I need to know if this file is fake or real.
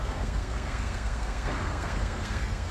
fake